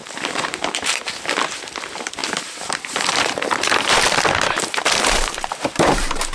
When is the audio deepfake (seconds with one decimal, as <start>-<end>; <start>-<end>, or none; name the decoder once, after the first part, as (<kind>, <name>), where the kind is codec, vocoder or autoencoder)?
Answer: 0.0-1.2 (vocoder, BigVGAN v2); 2.2-6.3